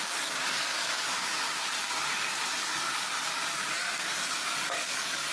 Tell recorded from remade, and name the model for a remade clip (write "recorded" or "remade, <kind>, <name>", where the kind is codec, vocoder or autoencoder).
remade, codec, DAC